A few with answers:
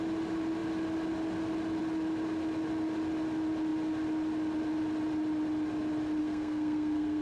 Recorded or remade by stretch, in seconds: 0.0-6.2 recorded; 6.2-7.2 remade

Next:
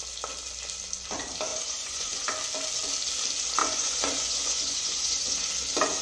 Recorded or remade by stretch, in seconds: 0.0-1.5 recorded; 1.5-2.3 remade; 2.3-3.6 recorded; 3.6-5.5 remade; 5.5-6.0 recorded

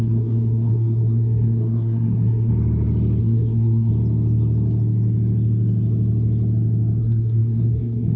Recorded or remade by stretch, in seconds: 0.0-2.5 remade; 2.5-3.2 recorded; 3.2-3.9 remade; 3.9-7.0 recorded; 7.0-8.2 remade